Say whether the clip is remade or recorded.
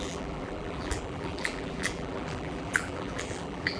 remade